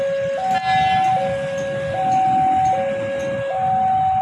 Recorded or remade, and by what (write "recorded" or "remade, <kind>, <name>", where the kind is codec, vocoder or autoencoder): recorded